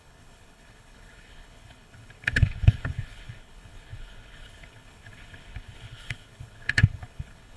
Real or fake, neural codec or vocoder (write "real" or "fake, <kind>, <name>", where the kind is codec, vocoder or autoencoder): fake, codec, HILCodec